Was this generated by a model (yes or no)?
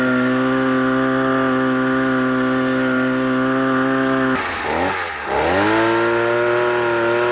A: no